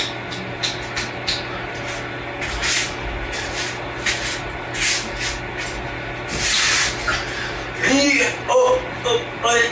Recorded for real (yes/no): yes